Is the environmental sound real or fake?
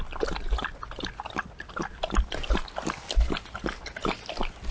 real